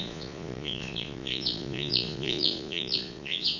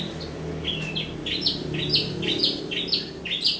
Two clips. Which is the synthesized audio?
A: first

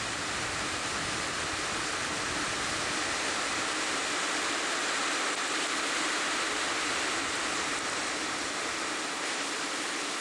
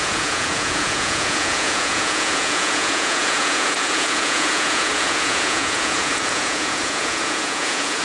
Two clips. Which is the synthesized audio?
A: second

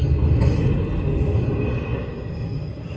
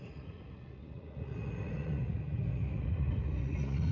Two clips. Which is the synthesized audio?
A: second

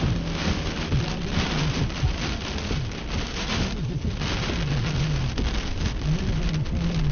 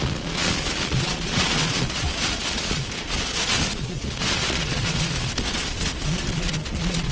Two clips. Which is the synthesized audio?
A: second